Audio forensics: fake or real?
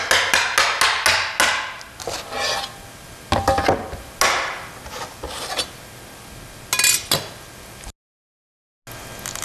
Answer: real